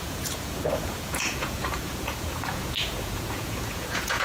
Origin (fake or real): fake